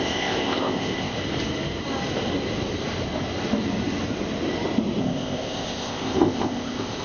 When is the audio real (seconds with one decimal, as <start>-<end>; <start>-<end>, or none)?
1.2-5.0